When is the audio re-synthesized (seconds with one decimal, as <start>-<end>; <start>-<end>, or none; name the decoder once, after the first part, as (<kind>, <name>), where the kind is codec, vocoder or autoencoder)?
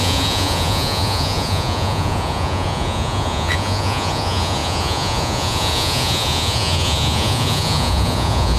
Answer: 0.0-8.6 (vocoder, Vocos)